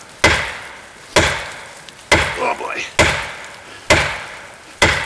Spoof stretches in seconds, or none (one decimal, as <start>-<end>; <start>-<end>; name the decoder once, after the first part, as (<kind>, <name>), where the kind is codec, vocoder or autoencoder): none